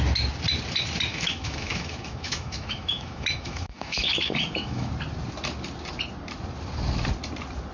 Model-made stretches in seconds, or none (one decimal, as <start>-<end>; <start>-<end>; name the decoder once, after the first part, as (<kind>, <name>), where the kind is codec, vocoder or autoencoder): 1.1-4.9 (autoencoder, DAC-VAE)